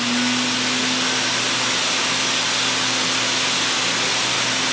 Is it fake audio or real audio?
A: real